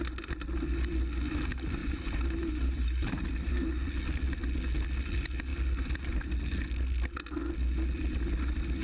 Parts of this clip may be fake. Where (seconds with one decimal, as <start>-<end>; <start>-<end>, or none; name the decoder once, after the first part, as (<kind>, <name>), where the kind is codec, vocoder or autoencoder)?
1.8-3.7 (vocoder, BigVGAN v2)